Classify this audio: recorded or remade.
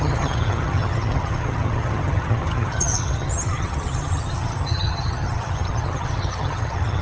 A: remade